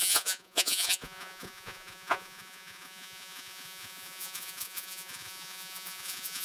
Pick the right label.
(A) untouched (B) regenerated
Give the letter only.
B